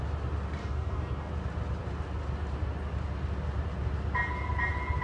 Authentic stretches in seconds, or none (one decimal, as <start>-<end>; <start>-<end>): 0.0-0.6; 1.3-5.0